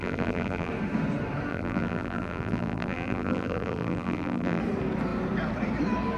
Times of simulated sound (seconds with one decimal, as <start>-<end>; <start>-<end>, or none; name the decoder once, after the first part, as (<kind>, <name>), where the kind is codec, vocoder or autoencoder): 0.0-0.7 (vocoder, BigVGAN v2); 1.5-4.6